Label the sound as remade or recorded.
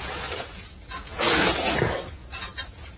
remade